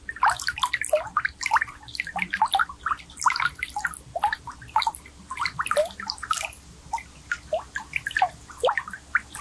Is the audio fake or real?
real